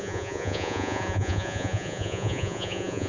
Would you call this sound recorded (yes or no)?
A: no